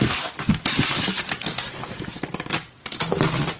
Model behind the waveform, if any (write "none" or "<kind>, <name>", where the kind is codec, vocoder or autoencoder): none